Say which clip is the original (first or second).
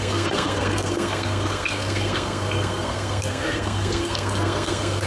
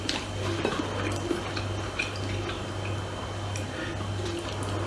second